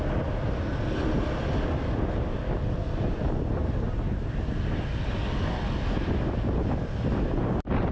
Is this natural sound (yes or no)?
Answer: yes